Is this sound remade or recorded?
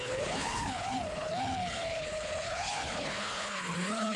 remade